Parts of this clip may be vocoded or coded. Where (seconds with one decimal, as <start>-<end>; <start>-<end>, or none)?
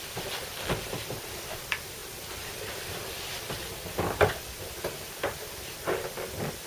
none